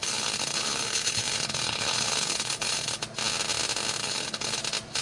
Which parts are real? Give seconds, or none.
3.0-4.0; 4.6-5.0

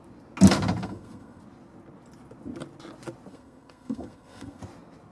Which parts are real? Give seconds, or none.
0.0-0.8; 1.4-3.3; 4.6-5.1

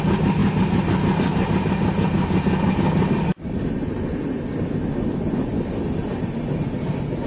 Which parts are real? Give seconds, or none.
0.0-7.3

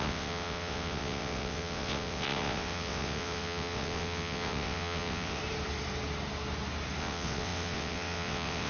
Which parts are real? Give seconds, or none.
5.4-7.0

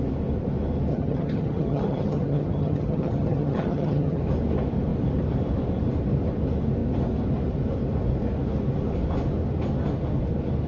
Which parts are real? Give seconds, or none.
0.0-0.9; 4.2-10.7

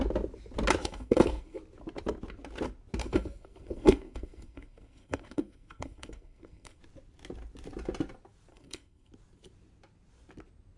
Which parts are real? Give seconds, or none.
0.0-0.8; 1.6-3.0; 6.8-8.5; 9.1-10.8